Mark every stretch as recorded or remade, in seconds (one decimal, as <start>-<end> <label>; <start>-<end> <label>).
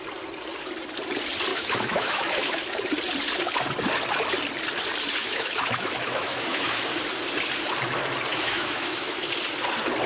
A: 0.0-1.5 recorded; 1.5-2.8 remade; 2.8-5.2 recorded; 5.2-6.8 remade; 6.8-8.3 recorded; 8.3-9.3 remade; 9.3-10.1 recorded